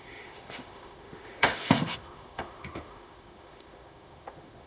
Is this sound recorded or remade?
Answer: remade